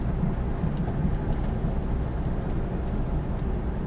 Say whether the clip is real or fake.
real